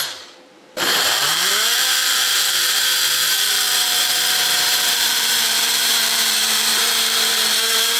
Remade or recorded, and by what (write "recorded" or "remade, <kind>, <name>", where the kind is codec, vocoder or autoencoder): remade, vocoder, BigVGAN v2